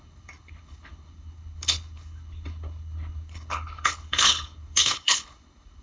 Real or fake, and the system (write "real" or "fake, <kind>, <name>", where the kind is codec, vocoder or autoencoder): fake, codec, HILCodec